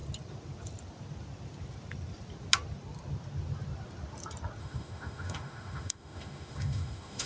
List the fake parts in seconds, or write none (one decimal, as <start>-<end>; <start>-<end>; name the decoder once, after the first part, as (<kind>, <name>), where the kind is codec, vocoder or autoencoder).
4.6-7.3 (autoencoder, DAC-VAE)

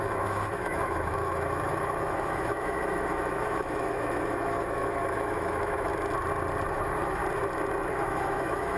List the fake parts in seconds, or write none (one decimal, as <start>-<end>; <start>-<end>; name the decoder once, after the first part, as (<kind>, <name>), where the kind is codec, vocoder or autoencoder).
0.0-5.9 (autoencoder, DAC-VAE); 6.7-7.2; 7.9-8.8

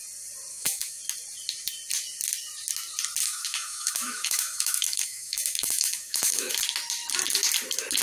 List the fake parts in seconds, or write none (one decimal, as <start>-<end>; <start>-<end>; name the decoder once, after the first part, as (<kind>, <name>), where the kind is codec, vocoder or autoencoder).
0.5-1.0 (autoencoder, DAC-VAE); 3.2-6.5

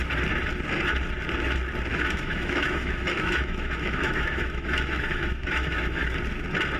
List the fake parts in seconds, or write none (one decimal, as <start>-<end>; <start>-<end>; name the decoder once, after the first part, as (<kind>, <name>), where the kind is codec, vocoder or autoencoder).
1.9-6.0 (autoencoder, DAC-VAE)

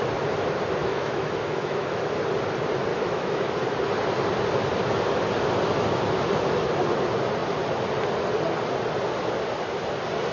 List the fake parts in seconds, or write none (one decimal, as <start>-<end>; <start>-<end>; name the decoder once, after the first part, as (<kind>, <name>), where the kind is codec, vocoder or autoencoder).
0.8-2.1 (autoencoder, DAC-VAE); 2.9-3.5

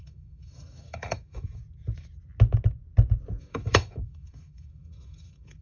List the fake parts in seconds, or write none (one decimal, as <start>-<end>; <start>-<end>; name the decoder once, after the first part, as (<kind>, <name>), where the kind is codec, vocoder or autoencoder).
0.0-1.6 (autoencoder, DAC-VAE); 3.4-5.6

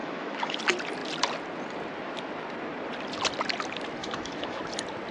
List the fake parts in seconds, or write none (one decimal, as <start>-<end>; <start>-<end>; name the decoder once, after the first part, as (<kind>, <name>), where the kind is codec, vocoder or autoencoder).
0.0-0.6 (autoencoder, DAC-VAE); 4.0-4.6

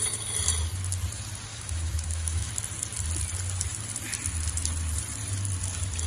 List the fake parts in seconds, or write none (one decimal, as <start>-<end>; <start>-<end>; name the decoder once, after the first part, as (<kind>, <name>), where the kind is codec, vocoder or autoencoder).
1.5-2.5 (autoencoder, DAC-VAE)